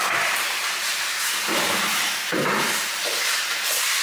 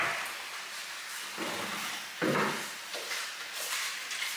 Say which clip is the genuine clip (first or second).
second